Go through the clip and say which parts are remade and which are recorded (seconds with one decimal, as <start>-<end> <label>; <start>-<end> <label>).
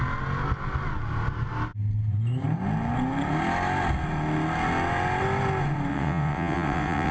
0.0-5.9 recorded; 5.9-7.1 remade